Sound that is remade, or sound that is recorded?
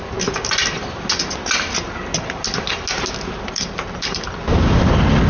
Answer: recorded